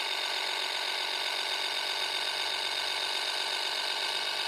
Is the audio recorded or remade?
recorded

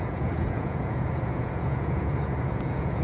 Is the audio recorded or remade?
remade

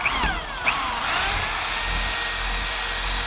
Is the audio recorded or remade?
recorded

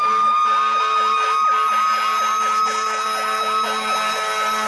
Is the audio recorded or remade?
recorded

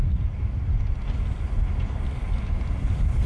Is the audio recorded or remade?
recorded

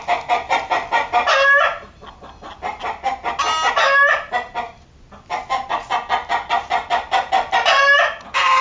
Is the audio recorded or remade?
recorded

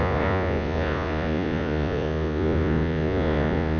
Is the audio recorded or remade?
remade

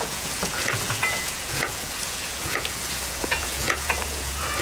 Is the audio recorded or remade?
remade